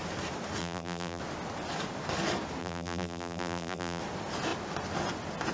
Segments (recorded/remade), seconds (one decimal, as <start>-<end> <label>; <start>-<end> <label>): 0.0-0.6 recorded; 0.6-1.2 remade; 1.2-2.6 recorded; 2.6-4.0 remade; 4.0-5.5 recorded